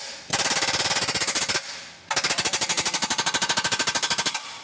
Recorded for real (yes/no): yes